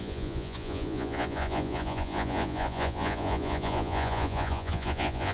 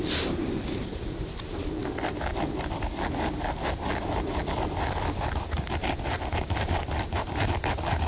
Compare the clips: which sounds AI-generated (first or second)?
first